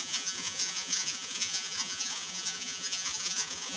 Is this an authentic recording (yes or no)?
no